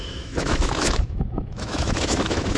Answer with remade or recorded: remade